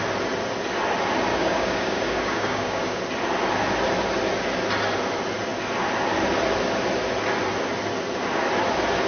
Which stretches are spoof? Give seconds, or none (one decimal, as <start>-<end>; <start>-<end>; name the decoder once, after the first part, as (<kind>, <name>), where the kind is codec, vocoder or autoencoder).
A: 1.3-3.0 (codec, DAC)